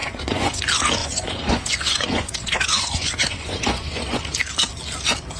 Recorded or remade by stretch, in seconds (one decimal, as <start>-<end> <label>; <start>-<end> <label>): 0.0-0.6 remade; 0.6-1.0 recorded; 1.0-4.2 remade; 4.2-5.4 recorded